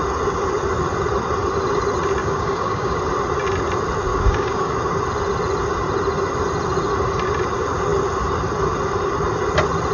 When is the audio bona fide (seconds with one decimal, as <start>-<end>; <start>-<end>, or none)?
0.0-2.2; 3.0-4.1; 4.7-9.9